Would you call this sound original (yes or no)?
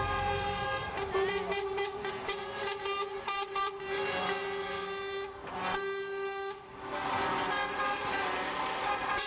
yes